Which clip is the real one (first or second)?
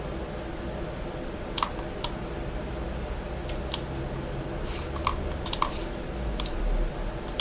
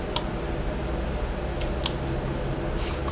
second